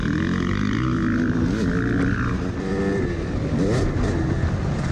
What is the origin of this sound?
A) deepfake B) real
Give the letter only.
B